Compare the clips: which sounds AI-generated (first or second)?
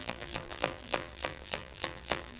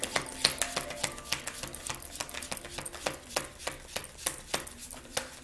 first